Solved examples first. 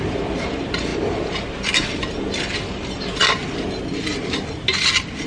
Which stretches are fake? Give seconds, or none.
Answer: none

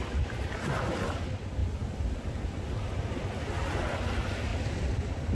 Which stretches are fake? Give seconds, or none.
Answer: 4.5-5.3 (vocoder, BigVGAN v2)

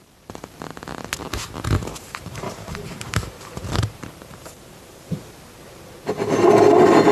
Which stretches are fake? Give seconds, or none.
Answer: 1.9-5.2 (vocoder, BigVGAN v2)

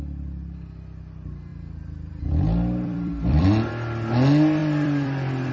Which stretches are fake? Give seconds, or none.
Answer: 1.5-3.7 (vocoder, BigVGAN v2); 4.6-5.5

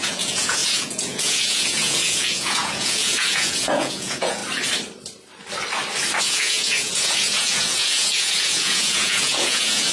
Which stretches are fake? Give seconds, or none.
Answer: 0.0-4.4 (vocoder, Vocos); 6.2-9.9

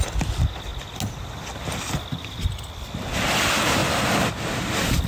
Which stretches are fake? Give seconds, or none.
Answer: 3.8-4.3 (vocoder, BigVGAN v2)

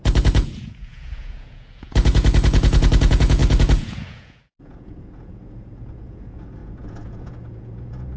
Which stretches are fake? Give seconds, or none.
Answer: 0.0-8.2 (vocoder, Vocos)